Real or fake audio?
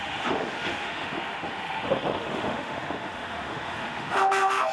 fake